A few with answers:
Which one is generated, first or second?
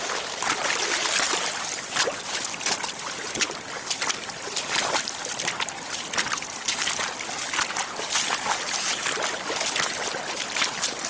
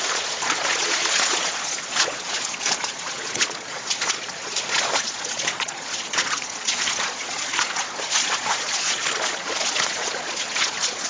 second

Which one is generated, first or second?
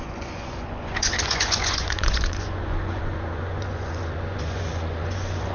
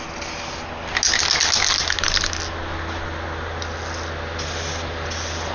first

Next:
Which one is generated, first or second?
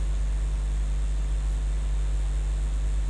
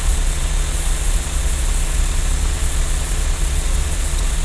second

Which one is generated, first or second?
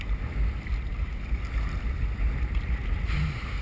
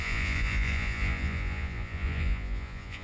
second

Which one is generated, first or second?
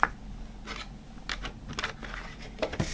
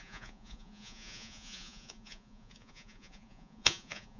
second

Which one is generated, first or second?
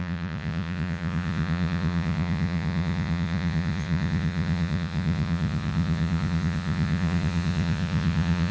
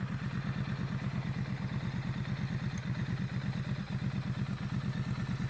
first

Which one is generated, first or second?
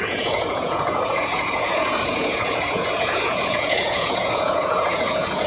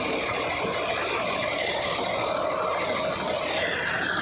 first